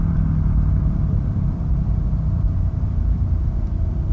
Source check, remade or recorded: remade